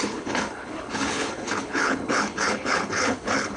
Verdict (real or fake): fake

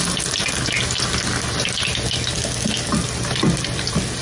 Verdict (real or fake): real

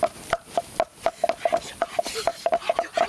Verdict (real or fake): real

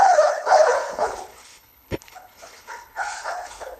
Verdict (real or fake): fake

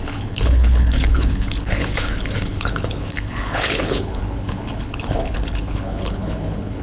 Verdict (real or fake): fake